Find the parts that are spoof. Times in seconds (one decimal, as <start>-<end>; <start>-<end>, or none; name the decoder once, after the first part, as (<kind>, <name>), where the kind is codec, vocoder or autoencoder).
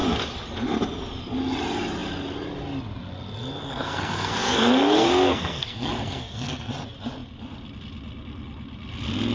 3.6-6.7 (codec, SNAC)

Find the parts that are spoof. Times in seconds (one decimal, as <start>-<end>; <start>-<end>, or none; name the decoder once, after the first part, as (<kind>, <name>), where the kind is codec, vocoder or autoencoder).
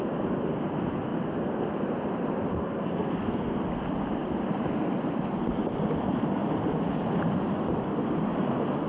2.5-3.6 (codec, SNAC)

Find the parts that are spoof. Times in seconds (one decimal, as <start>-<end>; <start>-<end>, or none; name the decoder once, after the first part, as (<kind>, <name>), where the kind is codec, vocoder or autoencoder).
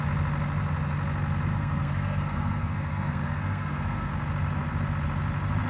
1.5-4.1 (codec, SNAC)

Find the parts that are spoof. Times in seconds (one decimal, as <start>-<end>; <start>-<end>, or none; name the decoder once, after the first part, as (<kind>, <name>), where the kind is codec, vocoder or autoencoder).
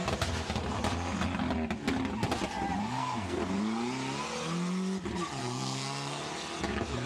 2.8-3.4 (codec, SNAC); 5.4-6.2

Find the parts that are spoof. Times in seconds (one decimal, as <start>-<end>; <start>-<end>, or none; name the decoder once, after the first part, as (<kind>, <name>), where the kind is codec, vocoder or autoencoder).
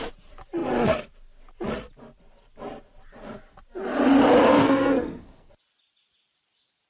4.5-5.5 (codec, SNAC)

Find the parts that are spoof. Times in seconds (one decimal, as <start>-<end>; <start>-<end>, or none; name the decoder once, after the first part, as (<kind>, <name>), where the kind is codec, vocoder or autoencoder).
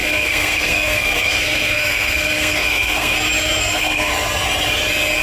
0.0-3.1 (codec, SNAC); 3.6-4.1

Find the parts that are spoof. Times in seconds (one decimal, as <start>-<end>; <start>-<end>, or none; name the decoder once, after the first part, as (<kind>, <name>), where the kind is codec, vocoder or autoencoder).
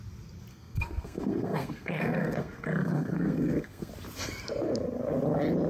0.5-3.9 (codec, SNAC)